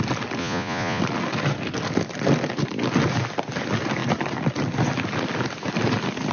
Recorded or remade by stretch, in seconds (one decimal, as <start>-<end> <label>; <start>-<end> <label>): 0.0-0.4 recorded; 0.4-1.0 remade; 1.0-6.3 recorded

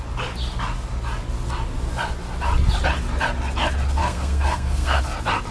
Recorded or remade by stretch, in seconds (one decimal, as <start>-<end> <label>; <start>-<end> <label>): 0.0-4.0 recorded; 4.0-5.0 remade; 5.0-5.5 recorded

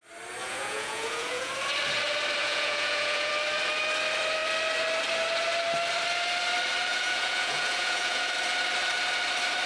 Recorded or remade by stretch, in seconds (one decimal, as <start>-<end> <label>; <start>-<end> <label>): 0.0-0.4 recorded; 0.4-1.5 remade; 1.5-2.4 recorded; 2.4-3.3 remade; 3.3-6.9 recorded; 6.9-8.3 remade; 8.3-9.7 recorded

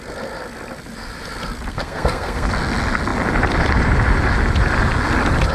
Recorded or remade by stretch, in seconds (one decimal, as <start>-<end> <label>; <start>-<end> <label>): 0.0-1.7 recorded; 1.7-2.5 remade; 2.5-5.5 recorded

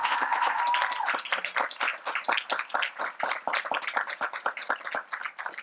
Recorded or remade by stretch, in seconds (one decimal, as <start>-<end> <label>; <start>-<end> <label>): 0.0-0.6 remade; 0.6-5.6 recorded